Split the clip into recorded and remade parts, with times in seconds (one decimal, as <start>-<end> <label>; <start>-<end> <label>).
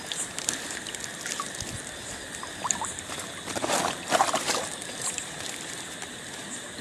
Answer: 0.0-6.8 recorded